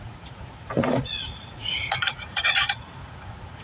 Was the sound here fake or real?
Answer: fake